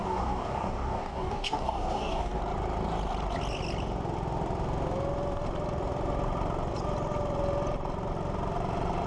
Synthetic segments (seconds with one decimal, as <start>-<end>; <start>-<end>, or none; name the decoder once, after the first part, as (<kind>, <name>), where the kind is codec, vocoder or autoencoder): 0.0-2.4 (codec, DAC)